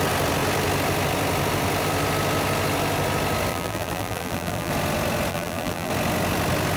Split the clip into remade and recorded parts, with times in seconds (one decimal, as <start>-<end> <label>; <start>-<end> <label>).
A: 0.0-3.5 recorded; 3.5-4.7 remade; 4.7-5.3 recorded; 5.3-5.9 remade; 5.9-6.8 recorded